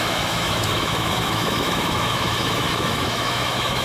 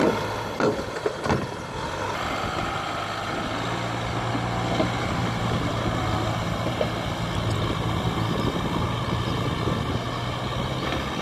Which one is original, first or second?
second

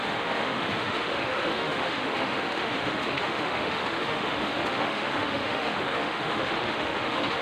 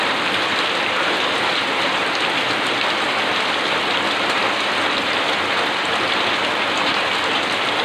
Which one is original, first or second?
second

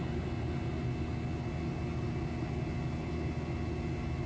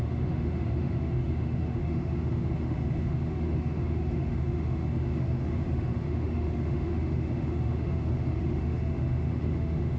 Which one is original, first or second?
first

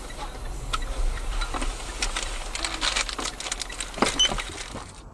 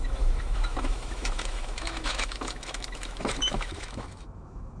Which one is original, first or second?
first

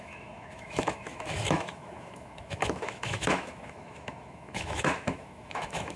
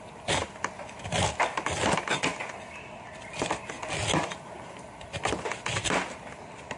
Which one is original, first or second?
second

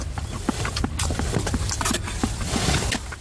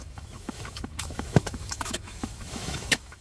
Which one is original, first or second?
first